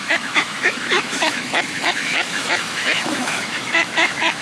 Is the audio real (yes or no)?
no